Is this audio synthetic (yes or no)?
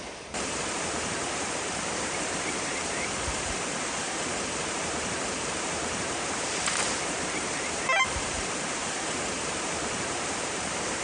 yes